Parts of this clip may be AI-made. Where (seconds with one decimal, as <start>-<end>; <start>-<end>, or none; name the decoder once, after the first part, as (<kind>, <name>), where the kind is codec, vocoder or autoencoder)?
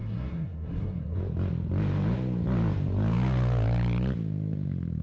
0.0-1.2 (codec, SNAC)